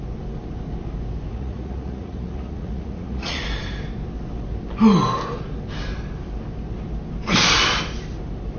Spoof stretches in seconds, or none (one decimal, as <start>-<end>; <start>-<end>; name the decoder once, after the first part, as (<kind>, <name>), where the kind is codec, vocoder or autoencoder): 1.3-3.4 (vocoder, Vocos)